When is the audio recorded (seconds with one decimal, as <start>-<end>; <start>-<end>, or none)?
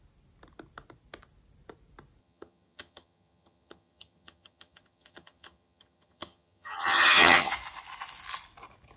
0.0-2.2; 7.5-9.0